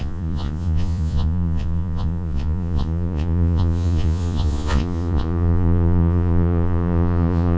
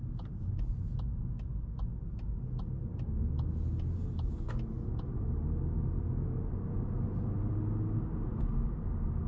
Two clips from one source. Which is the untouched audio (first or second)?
second